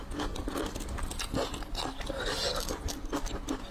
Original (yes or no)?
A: yes